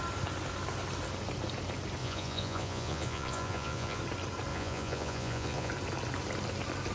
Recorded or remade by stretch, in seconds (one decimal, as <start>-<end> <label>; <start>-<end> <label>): 0.0-2.0 recorded; 2.0-4.0 remade; 4.0-4.5 recorded; 4.5-5.7 remade; 5.7-6.9 recorded